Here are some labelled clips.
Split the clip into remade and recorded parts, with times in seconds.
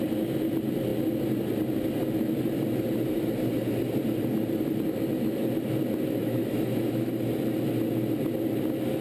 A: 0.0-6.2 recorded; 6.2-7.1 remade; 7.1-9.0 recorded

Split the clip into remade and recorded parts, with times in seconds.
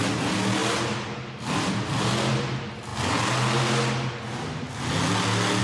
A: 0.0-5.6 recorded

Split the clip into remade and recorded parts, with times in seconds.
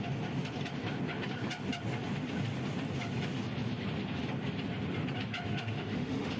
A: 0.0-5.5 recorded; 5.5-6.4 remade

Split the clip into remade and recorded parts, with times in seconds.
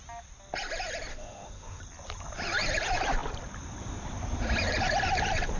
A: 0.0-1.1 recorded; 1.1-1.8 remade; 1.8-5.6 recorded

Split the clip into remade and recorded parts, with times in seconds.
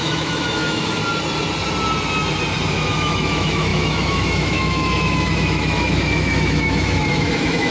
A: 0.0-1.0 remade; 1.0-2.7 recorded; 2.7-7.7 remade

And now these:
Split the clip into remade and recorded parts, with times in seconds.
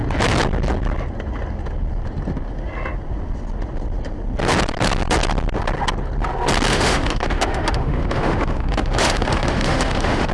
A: 0.0-6.7 recorded; 6.7-10.3 remade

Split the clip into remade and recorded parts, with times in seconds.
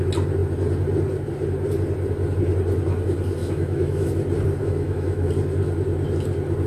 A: 0.0-3.4 recorded; 3.4-4.1 remade; 4.1-4.6 recorded; 4.6-5.3 remade; 5.3-6.7 recorded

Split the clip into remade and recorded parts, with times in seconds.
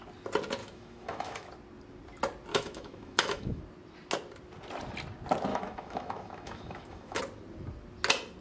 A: 0.0-0.6 recorded; 0.6-1.5 remade; 1.5-2.5 recorded; 2.5-3.6 remade; 3.6-5.5 recorded; 5.5-7.2 remade; 7.2-8.4 recorded